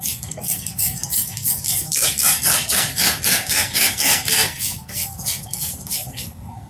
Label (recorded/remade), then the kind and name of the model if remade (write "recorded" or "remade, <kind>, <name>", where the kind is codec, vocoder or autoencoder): remade, codec, SNAC